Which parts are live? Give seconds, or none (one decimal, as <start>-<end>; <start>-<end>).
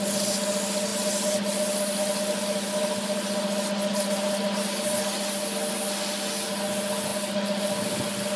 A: 0.0-8.4